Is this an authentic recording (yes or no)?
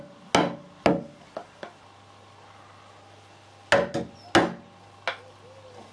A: yes